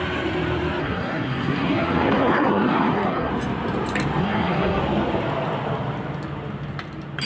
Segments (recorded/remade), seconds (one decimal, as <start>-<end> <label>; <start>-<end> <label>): 0.0-0.8 recorded; 0.8-3.3 remade; 3.3-4.2 recorded; 4.2-4.8 remade; 4.8-7.2 recorded